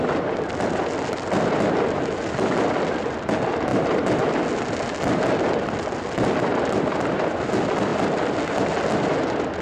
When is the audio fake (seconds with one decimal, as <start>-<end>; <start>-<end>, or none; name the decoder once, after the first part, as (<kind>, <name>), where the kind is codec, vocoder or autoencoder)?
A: none